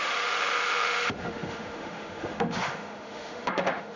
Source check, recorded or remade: remade